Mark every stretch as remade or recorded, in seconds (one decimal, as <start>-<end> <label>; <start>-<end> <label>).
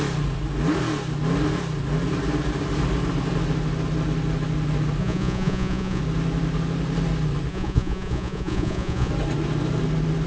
0.0-5.0 recorded; 5.0-6.0 remade; 6.0-7.5 recorded; 7.5-9.1 remade; 9.1-10.3 recorded